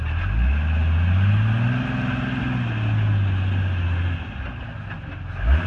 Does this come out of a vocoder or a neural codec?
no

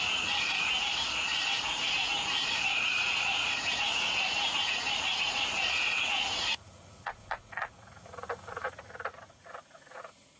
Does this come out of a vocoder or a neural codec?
yes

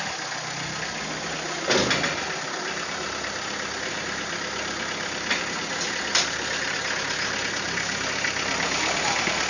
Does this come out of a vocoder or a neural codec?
no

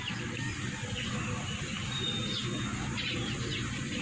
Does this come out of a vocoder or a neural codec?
no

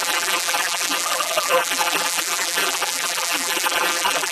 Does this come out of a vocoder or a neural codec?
yes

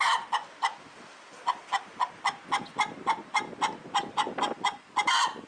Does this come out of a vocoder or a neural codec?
no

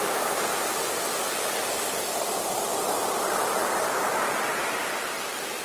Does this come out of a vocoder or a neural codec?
no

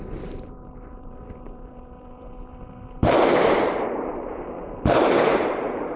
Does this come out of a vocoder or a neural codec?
yes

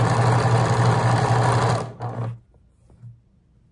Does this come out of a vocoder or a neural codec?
no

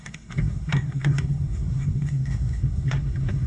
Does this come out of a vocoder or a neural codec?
yes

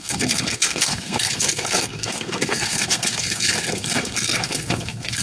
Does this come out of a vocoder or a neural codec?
yes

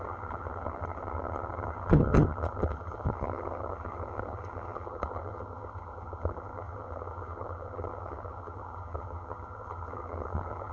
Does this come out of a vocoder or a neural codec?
yes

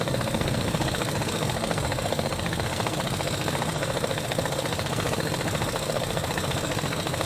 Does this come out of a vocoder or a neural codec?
yes